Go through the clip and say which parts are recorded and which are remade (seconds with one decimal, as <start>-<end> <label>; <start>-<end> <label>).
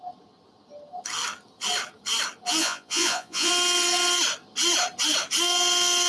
0.0-2.6 recorded; 2.6-3.5 remade; 3.5-6.1 recorded